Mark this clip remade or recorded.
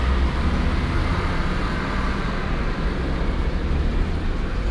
recorded